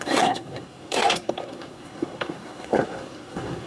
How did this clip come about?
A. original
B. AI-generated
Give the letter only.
B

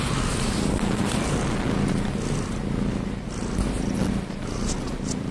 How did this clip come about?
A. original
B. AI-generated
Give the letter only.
A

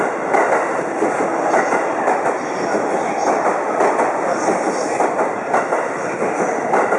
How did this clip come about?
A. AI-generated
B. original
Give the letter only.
B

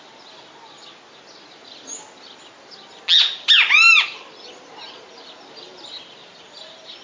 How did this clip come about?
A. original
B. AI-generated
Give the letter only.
A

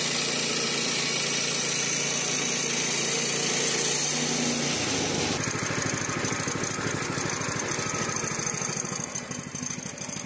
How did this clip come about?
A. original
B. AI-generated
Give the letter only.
A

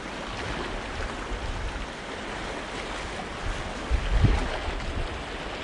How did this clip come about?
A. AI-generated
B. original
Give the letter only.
B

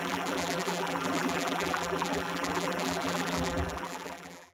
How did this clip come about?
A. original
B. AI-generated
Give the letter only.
B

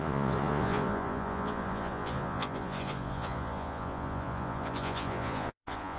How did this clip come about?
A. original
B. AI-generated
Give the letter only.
B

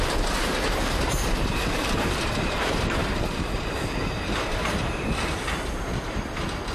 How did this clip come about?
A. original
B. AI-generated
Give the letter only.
B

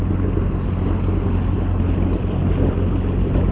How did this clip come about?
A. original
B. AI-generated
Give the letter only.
A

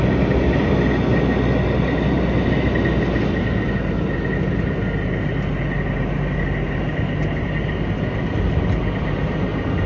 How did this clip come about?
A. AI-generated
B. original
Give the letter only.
B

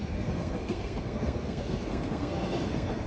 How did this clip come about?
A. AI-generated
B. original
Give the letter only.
A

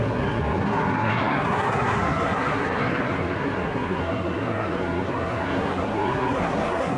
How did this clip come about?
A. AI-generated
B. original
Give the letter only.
A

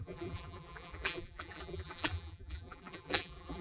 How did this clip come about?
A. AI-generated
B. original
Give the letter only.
A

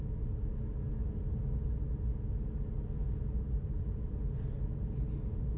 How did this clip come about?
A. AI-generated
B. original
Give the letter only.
B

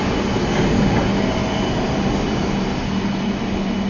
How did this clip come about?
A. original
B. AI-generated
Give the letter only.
A